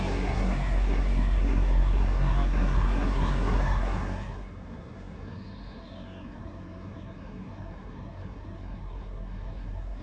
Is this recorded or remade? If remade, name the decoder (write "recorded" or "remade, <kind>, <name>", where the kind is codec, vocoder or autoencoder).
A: remade, codec, SNAC